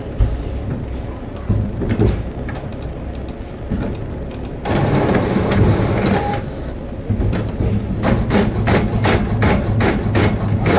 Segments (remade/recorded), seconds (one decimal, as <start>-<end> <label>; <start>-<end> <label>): 0.0-10.8 recorded